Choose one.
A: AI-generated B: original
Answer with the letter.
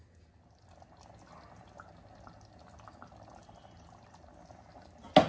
B